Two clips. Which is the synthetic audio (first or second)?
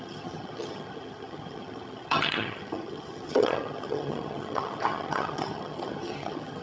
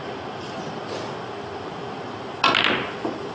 first